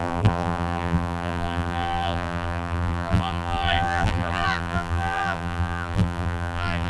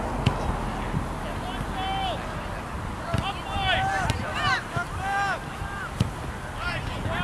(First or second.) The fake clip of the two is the first